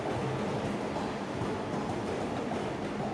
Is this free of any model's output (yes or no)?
yes